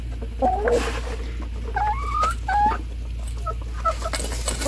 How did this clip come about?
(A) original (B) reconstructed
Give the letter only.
A